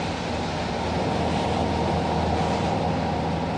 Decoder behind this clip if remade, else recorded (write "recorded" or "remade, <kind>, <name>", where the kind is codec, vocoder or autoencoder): recorded